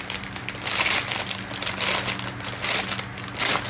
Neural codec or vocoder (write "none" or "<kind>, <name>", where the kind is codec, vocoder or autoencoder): none